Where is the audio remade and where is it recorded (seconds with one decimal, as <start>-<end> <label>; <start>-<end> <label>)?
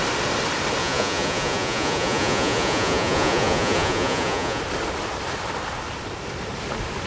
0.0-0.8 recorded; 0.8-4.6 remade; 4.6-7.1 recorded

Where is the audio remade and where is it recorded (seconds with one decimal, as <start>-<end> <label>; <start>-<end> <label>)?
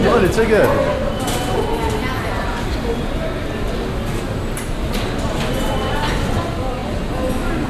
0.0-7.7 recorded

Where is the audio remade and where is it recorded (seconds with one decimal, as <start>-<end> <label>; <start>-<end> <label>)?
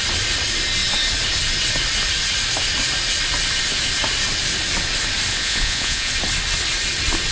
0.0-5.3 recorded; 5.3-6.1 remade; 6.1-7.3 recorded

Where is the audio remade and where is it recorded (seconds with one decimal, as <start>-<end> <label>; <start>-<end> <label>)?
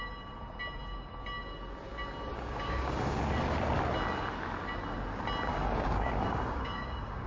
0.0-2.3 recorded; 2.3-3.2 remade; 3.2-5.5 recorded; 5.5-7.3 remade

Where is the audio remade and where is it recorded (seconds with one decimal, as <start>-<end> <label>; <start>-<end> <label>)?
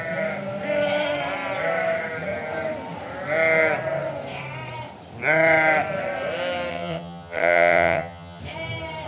0.0-6.7 recorded; 6.7-8.4 remade; 8.4-9.1 recorded